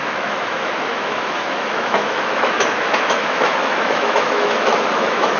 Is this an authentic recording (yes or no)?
no